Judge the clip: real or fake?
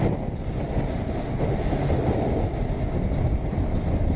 real